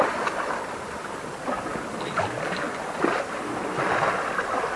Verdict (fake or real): real